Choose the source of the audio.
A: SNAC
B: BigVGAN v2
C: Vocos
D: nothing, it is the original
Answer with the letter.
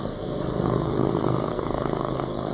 A